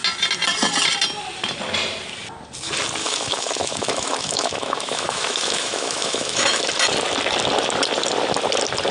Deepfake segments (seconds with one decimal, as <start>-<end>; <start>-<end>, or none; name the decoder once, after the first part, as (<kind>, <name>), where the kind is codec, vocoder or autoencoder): 3.0-6.6 (autoencoder, DAC-VAE)